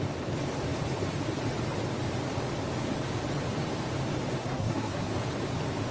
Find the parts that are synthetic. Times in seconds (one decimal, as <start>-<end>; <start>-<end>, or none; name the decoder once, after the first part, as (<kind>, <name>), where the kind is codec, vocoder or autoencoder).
4.4-5.1 (codec, SNAC)